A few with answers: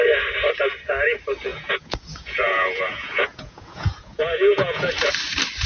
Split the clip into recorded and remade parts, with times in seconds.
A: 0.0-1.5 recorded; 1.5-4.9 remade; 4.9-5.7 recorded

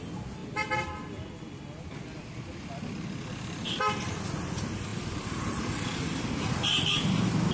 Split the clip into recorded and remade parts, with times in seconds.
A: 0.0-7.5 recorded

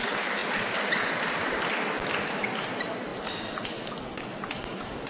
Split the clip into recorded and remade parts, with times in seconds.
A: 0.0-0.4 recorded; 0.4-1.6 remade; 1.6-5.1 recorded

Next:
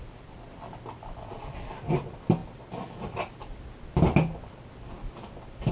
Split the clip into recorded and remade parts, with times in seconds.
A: 0.0-5.7 recorded

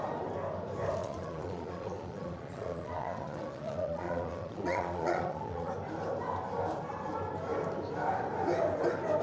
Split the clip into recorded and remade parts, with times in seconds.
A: 0.0-1.0 recorded; 1.0-5.7 remade; 5.7-9.2 recorded